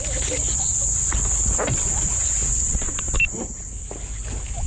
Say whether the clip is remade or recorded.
recorded